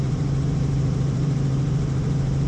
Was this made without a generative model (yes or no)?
no